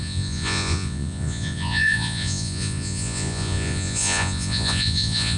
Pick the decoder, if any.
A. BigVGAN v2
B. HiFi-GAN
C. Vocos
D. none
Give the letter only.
C